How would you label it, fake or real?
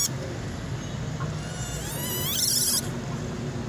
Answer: real